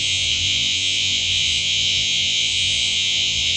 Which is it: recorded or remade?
remade